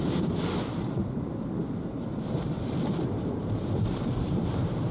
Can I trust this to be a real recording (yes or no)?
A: no